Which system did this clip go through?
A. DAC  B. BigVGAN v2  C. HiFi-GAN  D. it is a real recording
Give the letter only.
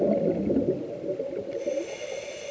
D